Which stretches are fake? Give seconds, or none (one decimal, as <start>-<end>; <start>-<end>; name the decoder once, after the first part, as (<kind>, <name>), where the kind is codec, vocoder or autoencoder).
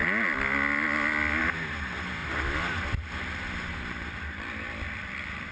2.2-5.5 (vocoder, BigVGAN v2)